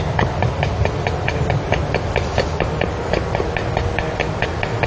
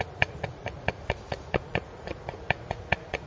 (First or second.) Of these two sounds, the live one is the first